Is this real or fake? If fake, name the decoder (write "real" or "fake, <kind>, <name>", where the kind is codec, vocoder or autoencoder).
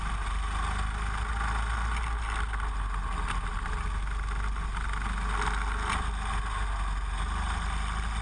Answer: real